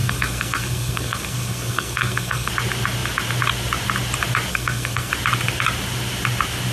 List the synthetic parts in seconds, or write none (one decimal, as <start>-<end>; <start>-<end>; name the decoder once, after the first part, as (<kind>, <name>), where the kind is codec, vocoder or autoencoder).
0.0-2.5 (codec, SNAC); 4.5-5.1